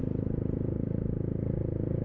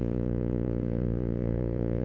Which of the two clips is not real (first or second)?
second